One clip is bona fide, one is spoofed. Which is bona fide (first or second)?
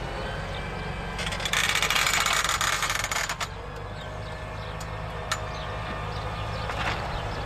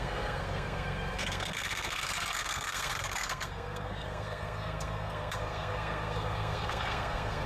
first